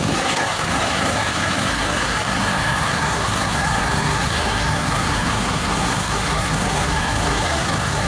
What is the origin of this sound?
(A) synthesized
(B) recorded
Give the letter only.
A